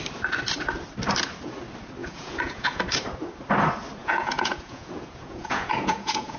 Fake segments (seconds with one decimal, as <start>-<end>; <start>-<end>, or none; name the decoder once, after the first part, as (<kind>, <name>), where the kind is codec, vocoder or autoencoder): 2.0-2.8 (vocoder, Vocos); 4.0-6.4